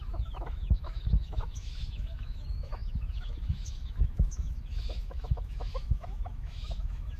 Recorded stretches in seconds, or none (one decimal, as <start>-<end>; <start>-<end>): none